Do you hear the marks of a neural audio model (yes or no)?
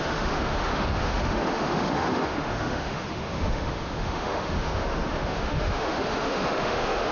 yes